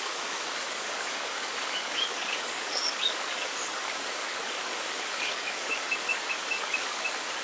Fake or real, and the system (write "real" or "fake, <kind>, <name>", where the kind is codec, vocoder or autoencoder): fake, codec, DAC